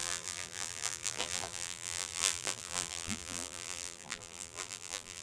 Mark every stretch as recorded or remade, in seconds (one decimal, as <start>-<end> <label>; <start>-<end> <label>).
0.0-5.2 remade